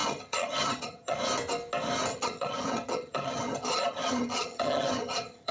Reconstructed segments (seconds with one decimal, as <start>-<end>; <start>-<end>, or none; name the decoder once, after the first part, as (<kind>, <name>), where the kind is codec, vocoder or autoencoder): 0.0-1.2 (vocoder, HiFi-GAN); 2.1-5.5